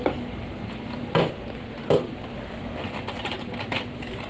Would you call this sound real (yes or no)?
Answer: yes